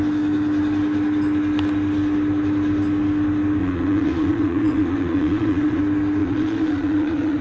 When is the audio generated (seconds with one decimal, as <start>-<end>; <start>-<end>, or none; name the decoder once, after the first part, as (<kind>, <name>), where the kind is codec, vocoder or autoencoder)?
3.6-5.8 (vocoder, Vocos); 6.2-7.4